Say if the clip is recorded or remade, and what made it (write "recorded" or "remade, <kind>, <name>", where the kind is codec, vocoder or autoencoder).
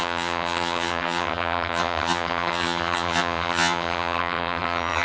remade, vocoder, HiFi-GAN